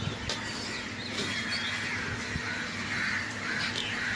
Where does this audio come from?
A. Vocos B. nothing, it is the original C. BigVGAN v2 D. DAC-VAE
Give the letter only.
B